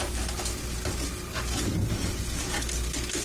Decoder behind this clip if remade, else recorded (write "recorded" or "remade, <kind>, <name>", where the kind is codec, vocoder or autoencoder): recorded